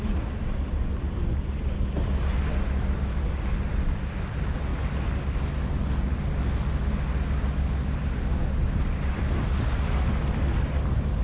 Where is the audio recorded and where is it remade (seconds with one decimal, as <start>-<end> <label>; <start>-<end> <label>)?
0.0-11.2 recorded